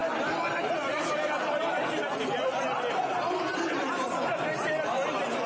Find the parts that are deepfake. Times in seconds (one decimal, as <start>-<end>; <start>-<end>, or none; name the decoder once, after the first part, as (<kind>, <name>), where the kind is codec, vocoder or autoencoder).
none